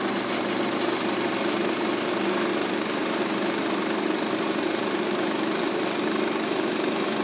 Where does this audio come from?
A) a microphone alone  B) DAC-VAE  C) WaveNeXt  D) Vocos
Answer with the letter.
A